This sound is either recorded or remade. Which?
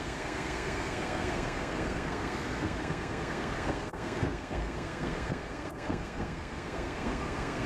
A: remade